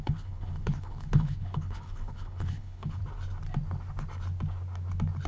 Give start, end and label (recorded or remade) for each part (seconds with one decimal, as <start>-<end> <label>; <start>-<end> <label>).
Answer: 0.0-3.0 remade; 3.0-5.3 recorded